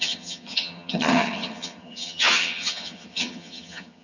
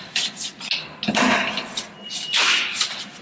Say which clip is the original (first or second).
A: second